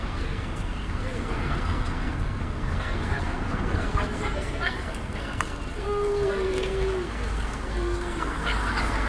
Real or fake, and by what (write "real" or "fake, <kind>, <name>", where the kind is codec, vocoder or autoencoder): fake, codec, SNAC